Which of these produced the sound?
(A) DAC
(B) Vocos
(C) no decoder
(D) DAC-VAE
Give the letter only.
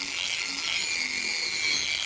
C